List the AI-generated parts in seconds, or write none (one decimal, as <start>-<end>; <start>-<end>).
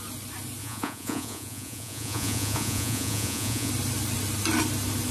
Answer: 0.6-3.7